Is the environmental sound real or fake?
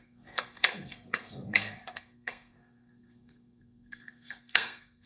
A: fake